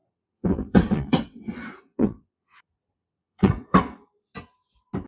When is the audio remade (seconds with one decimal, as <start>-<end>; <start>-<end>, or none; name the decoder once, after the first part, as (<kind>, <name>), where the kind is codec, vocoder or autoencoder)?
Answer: 0.0-1.4 (vocoder, WaveNeXt); 1.9-3.8